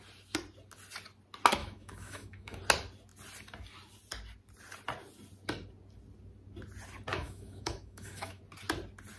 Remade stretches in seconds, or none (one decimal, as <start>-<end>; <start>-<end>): 1.6-2.6; 7.1-8.4